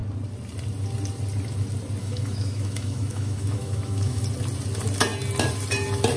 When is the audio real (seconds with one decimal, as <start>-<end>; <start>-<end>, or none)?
0.0-2.0; 4.2-6.2